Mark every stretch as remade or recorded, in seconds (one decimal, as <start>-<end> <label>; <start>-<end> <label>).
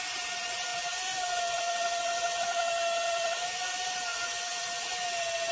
0.0-4.1 recorded; 4.1-4.8 remade; 4.8-5.5 recorded